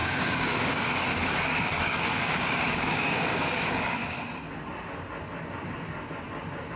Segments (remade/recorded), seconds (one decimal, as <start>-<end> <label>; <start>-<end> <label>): 0.0-4.0 remade; 4.0-6.8 recorded